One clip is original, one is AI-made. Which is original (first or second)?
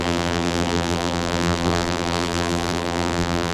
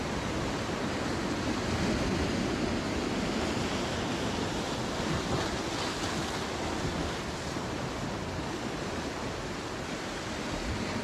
second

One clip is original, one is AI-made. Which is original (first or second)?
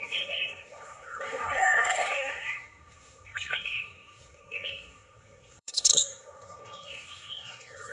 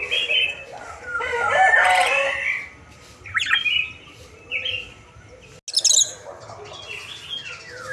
second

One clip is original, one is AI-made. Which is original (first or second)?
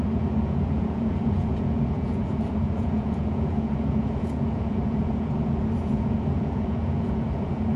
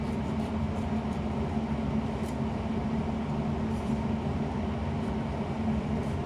second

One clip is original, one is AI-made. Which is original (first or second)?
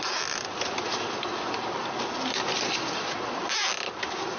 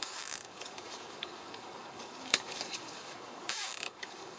first